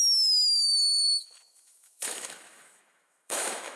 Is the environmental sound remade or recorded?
remade